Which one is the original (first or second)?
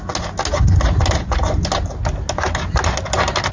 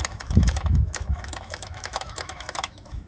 first